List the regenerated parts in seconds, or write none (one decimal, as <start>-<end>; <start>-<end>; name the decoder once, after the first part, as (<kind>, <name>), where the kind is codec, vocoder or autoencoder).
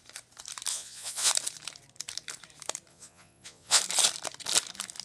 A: 0.7-1.3 (vocoder, Vocos); 2.9-3.8